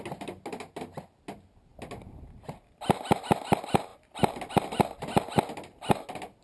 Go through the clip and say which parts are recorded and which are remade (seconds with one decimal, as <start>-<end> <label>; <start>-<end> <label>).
0.0-6.4 recorded